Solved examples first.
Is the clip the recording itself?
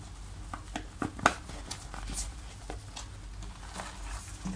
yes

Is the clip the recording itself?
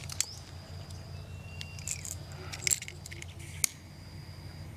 yes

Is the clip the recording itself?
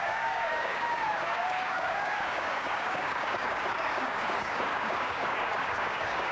no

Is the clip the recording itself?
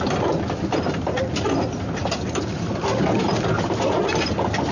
yes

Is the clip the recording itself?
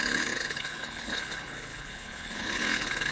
no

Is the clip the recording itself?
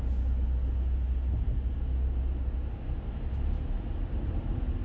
yes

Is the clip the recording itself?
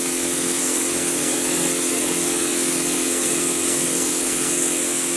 no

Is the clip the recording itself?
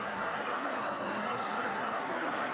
no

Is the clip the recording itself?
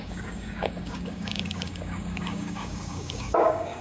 no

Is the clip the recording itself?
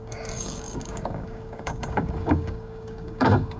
no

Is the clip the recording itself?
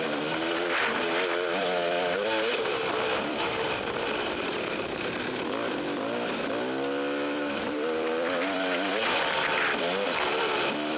no